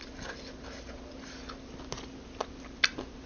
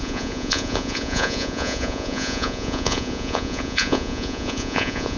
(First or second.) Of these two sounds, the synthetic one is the second